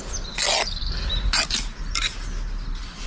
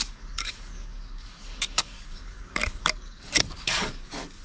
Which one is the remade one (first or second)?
second